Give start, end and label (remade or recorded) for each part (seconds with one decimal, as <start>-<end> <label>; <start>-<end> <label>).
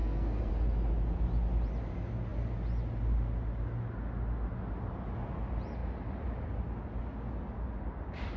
0.0-0.5 remade; 0.5-8.4 recorded